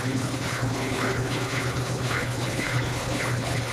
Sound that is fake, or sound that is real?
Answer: fake